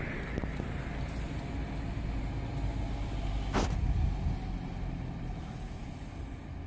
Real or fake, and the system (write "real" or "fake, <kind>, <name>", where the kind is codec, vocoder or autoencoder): real